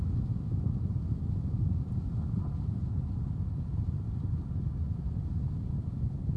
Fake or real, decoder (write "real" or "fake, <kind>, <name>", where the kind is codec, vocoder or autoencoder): real